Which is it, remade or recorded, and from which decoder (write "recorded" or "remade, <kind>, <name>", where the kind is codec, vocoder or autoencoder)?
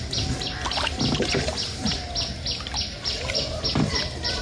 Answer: recorded